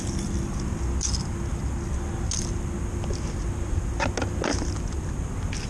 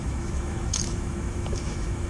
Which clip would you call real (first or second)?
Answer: first